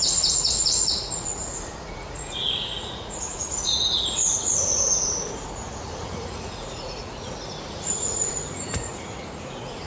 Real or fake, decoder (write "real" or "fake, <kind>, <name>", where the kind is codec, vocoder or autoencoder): fake, vocoder, Vocos